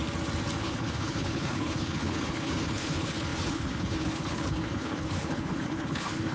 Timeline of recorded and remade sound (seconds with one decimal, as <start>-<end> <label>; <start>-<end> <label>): 0.0-0.6 recorded; 0.6-6.3 remade